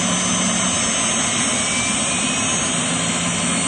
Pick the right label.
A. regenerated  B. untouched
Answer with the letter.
B